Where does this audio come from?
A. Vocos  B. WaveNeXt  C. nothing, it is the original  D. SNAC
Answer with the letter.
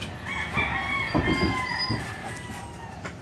C